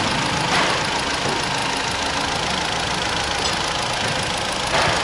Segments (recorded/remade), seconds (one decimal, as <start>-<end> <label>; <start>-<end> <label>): 0.0-5.0 recorded